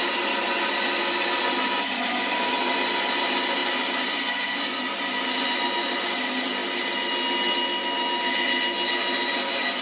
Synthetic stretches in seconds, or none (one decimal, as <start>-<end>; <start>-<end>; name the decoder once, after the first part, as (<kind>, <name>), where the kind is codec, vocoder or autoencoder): none